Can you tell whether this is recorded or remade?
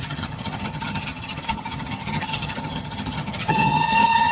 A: remade